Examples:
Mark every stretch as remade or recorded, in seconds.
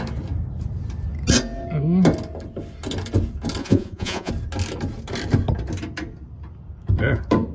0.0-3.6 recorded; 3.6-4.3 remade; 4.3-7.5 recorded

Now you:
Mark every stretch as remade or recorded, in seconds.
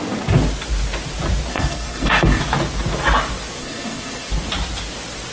0.0-1.5 recorded; 1.5-2.4 remade; 2.4-3.6 recorded; 3.6-4.3 remade; 4.3-5.3 recorded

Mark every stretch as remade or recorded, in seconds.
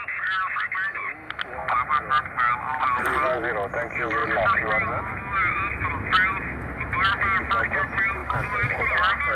0.0-9.3 recorded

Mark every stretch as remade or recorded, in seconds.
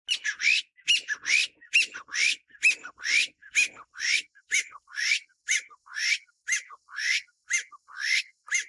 0.0-8.7 recorded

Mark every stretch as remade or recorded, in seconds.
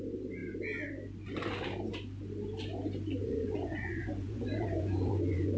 0.0-3.2 recorded; 3.2-5.6 remade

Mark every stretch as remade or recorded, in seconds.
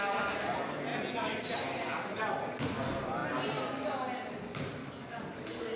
0.0-4.8 recorded; 4.8-5.8 remade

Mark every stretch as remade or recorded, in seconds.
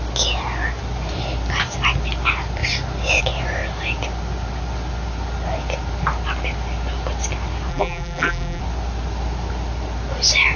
0.0-7.7 recorded; 7.7-8.6 remade; 8.6-10.6 recorded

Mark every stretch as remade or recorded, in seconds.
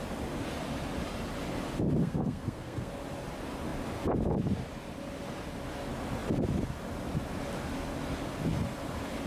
0.0-2.0 recorded; 2.0-2.9 remade; 2.9-9.3 recorded